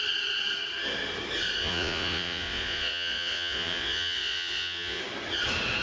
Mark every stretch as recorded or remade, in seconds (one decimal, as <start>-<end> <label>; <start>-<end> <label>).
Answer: 0.0-1.6 recorded; 1.6-5.0 remade; 5.0-5.8 recorded